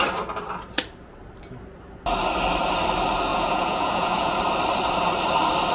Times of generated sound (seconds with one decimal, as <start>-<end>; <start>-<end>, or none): 3.3-4.3